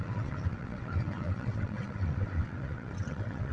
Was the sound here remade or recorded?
remade